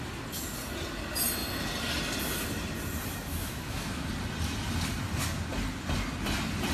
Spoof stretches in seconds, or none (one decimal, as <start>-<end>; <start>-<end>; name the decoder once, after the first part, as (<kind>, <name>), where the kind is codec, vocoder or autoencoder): 3.3-4.1 (autoencoder, DAC-VAE)